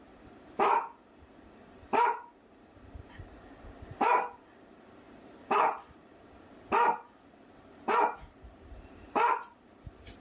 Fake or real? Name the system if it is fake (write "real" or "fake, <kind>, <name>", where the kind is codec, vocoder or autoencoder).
fake, vocoder, BigVGAN v2